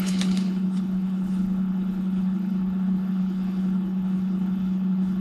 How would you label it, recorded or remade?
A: remade